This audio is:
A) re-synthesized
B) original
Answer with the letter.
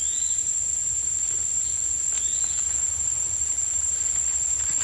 B